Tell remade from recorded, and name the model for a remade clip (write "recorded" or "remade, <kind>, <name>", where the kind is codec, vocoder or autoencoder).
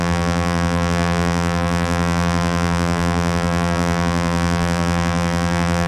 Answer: remade, vocoder, BigVGAN v2